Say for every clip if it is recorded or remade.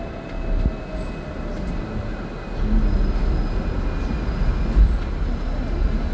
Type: recorded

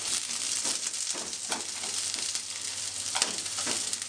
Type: recorded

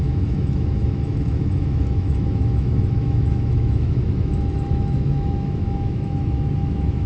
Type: remade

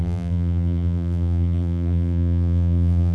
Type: remade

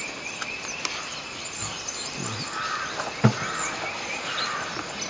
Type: recorded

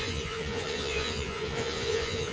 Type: remade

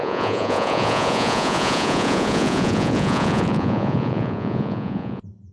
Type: remade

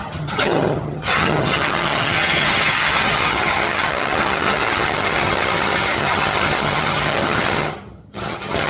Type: remade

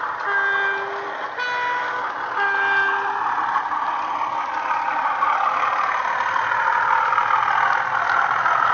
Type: recorded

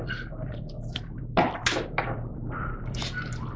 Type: remade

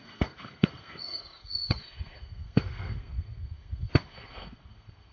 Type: remade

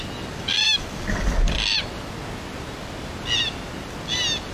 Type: recorded